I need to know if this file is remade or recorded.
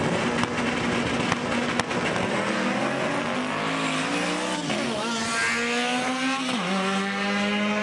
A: recorded